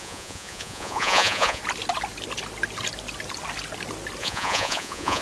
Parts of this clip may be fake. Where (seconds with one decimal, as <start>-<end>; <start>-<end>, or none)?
0.0-1.6; 4.2-5.2